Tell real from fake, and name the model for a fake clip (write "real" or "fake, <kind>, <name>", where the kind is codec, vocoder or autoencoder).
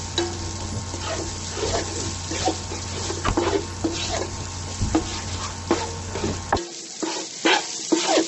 real